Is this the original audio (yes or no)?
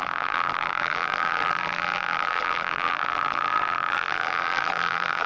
no